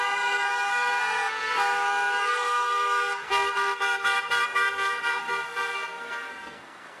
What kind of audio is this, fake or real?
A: fake